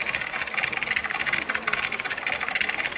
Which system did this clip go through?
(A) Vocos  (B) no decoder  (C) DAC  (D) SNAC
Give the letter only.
B